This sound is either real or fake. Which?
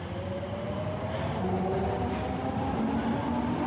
real